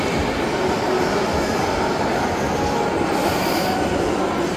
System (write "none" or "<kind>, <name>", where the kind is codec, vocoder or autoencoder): none